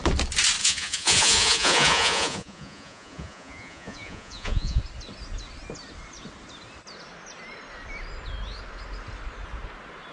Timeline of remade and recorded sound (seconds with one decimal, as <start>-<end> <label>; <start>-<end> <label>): 0.0-0.6 recorded; 0.6-4.8 remade; 4.8-10.1 recorded

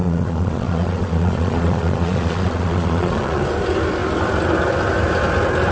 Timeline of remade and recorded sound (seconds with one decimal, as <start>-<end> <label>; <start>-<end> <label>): 0.0-3.4 remade; 3.4-5.7 recorded